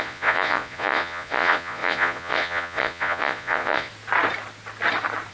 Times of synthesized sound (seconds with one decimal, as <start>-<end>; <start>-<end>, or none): 0.0-3.9